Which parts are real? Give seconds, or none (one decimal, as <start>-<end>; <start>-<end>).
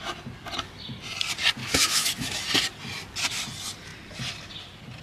0.0-1.6; 2.4-5.0